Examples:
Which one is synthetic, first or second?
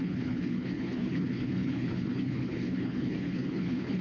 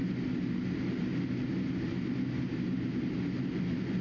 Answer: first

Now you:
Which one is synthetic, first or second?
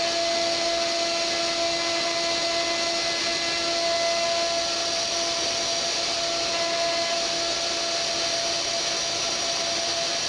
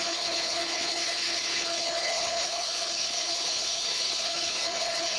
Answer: second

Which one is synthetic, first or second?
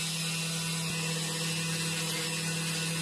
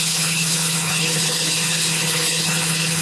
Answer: second